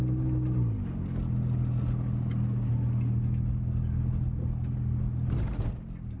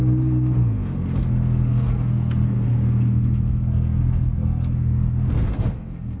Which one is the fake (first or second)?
second